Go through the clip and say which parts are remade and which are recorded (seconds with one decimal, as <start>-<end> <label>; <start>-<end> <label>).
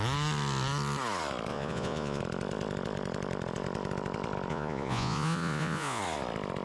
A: 0.0-1.5 recorded; 1.5-2.2 remade; 2.2-4.5 recorded; 4.5-6.0 remade; 6.0-6.6 recorded